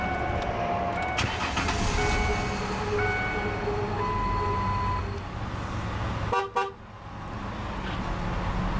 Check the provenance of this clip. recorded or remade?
recorded